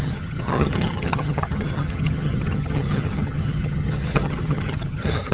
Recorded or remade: remade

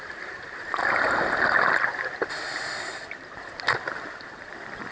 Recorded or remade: recorded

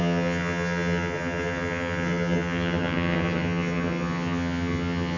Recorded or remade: remade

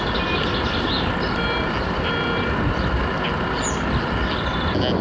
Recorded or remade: recorded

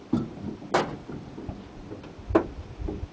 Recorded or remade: recorded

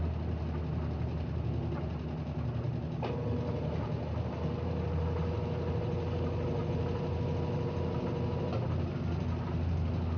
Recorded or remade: recorded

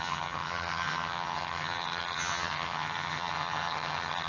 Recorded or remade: remade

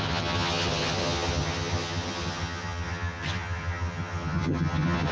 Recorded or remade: remade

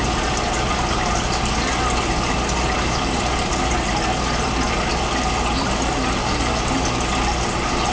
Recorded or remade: recorded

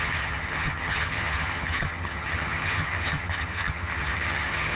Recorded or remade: remade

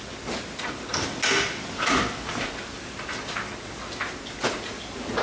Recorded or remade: recorded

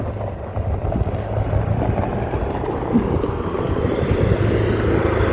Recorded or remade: recorded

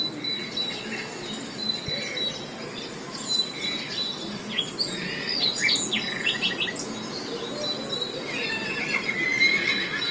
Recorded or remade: recorded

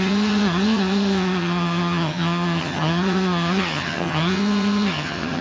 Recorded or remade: remade